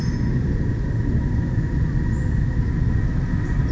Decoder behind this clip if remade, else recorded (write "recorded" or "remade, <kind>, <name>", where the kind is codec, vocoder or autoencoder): recorded